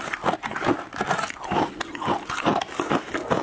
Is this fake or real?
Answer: real